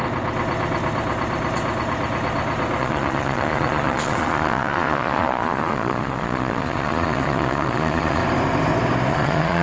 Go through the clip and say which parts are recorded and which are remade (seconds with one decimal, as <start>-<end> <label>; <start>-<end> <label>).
0.0-2.8 recorded; 2.8-8.2 remade; 8.2-9.1 recorded; 9.1-9.6 remade